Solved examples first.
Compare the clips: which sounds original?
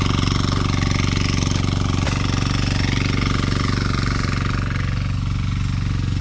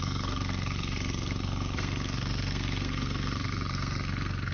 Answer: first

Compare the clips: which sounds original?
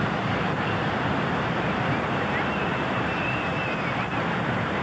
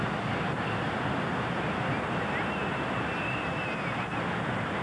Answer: second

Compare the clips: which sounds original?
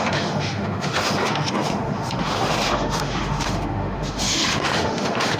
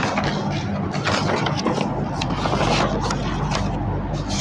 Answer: second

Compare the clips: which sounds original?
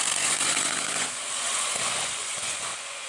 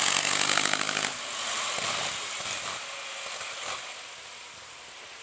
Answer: second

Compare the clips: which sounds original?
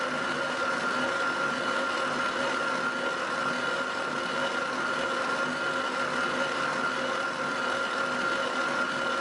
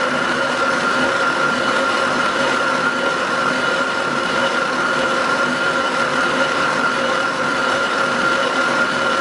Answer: first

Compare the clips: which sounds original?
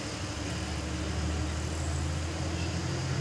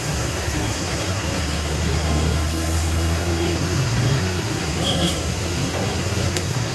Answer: first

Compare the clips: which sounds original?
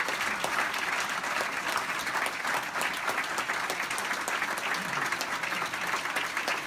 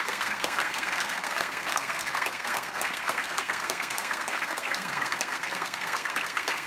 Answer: first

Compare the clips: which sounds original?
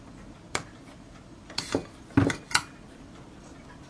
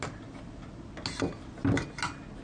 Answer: second